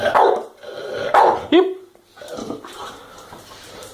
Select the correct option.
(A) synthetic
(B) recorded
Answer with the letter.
B